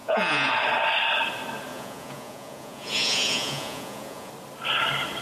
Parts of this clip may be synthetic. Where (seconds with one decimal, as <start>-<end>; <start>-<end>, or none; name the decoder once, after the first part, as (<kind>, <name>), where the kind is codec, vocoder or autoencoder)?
0.0-0.5 (vocoder, Vocos); 1.7-4.3